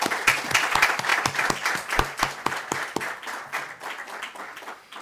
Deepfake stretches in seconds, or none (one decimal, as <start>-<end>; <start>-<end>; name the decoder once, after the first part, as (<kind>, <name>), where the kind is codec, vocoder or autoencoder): none